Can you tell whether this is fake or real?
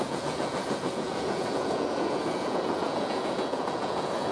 fake